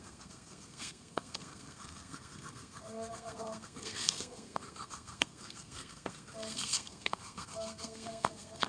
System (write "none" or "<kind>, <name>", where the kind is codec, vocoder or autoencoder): codec, SNAC